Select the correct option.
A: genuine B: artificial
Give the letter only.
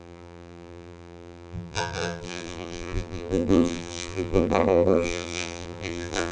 B